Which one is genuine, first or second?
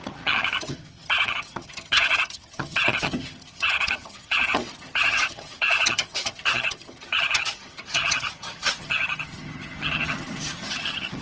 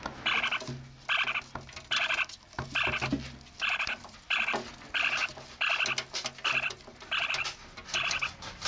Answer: second